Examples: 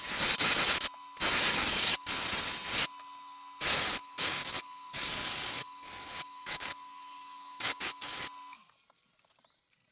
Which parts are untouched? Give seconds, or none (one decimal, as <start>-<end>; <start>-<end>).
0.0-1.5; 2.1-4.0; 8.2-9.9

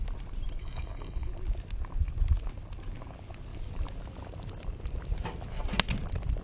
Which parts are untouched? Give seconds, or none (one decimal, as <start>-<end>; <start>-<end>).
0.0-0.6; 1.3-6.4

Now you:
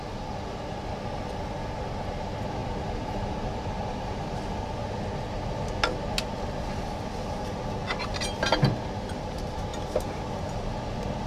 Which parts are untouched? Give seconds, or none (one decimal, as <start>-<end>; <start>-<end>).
0.0-11.3

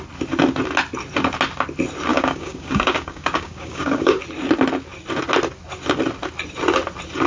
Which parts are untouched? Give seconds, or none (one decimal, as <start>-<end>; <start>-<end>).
0.0-2.1; 4.2-7.3

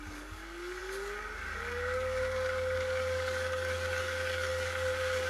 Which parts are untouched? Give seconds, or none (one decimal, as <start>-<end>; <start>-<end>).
none

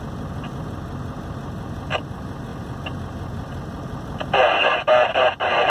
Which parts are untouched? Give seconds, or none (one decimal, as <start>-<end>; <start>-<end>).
0.0-5.7

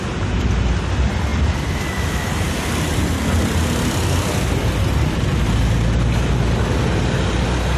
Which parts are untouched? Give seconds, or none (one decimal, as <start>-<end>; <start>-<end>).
0.0-7.8

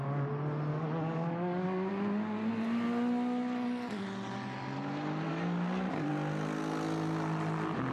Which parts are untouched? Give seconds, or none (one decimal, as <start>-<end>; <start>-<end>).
0.0-0.7; 1.9-5.3; 6.1-7.9